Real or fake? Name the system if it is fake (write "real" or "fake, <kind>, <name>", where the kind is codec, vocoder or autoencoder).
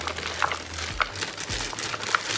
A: real